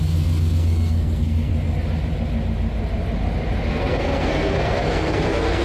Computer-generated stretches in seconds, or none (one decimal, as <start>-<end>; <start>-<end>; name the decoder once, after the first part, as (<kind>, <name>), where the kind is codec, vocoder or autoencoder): 0.0-1.5 (codec, SNAC); 3.7-5.6

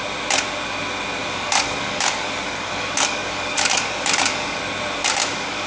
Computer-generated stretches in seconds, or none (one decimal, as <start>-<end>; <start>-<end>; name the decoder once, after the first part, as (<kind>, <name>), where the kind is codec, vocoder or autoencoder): 1.2-4.6 (codec, DAC); 5.0-5.7

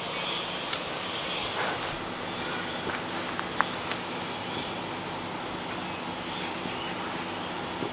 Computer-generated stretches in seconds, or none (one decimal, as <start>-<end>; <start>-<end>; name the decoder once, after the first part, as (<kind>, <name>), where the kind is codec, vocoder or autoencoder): none

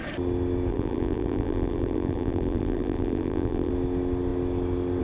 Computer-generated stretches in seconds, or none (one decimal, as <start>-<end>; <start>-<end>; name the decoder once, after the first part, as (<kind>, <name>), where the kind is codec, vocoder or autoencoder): 0.7-3.7 (vocoder, BigVGAN v2)

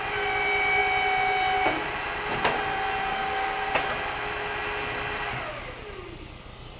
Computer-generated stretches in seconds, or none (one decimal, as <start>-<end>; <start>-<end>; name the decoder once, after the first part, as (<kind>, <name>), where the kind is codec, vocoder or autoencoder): 3.1-3.7 (codec, SNAC)